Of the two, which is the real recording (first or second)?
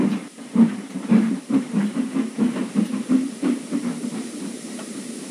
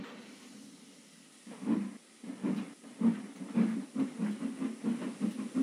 second